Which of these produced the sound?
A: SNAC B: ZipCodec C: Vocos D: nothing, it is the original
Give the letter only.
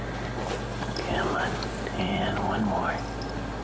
D